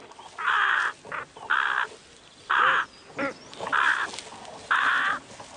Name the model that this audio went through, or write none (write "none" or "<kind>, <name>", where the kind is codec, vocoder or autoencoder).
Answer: none